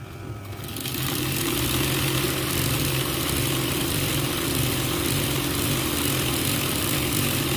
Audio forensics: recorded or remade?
remade